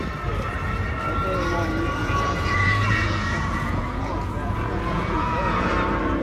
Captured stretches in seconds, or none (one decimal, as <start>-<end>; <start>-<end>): 0.0-2.0; 5.7-6.2